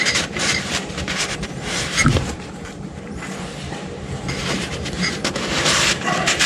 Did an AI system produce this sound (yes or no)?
yes